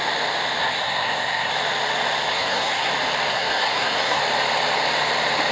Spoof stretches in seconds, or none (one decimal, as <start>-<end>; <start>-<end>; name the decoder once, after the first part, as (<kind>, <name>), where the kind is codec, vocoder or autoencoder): 0.6-1.5 (codec, SNAC); 2.3-2.9; 3.3-4.2